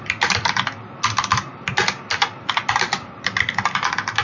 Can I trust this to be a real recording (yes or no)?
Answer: yes